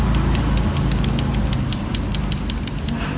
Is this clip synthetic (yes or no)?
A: no